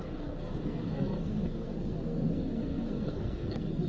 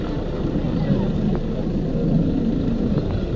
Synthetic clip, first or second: first